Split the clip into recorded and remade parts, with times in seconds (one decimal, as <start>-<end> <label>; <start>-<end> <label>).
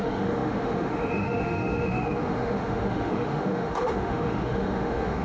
0.0-5.2 remade